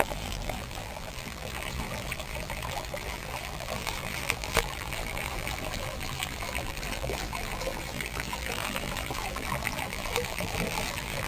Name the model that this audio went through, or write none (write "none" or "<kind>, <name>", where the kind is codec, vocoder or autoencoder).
vocoder, BigVGAN v2